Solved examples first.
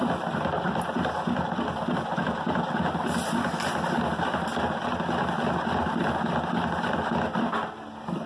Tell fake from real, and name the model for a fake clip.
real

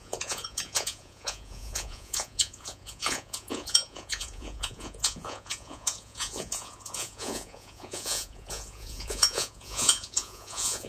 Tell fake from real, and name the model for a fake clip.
fake, vocoder, Vocos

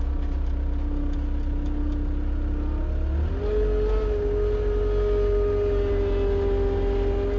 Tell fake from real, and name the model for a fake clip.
real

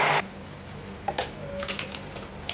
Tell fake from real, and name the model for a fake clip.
real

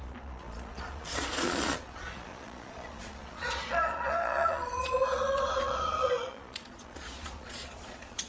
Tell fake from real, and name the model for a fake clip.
fake, vocoder, Vocos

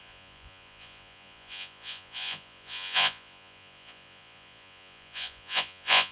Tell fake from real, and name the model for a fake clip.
fake, vocoder, Vocos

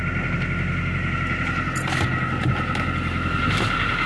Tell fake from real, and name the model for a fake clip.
real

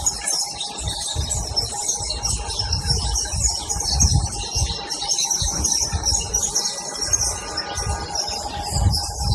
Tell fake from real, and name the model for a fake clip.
real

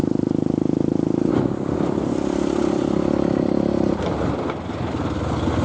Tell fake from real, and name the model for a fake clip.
real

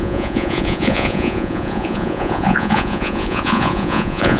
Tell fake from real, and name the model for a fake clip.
fake, vocoder, Vocos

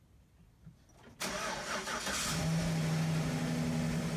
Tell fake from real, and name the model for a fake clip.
real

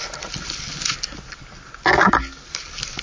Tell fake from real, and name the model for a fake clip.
real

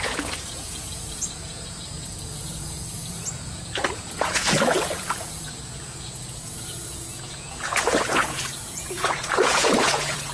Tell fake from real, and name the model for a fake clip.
fake, vocoder, Vocos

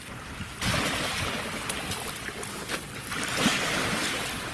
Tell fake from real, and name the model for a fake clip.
real